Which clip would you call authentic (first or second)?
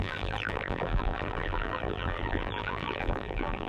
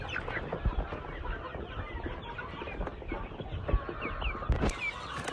second